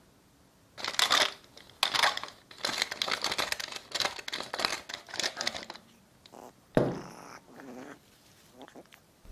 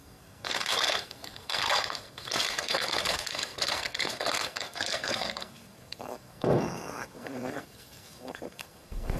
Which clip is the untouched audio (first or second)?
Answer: first